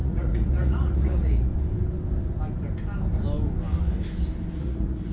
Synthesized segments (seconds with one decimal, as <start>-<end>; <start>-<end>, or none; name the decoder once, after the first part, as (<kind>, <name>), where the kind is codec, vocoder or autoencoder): 0.0-1.5 (vocoder, Vocos); 4.6-5.1